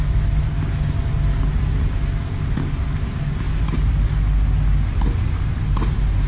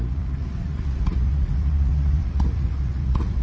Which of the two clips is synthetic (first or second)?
second